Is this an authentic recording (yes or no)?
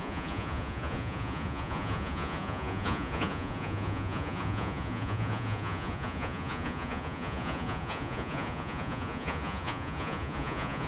no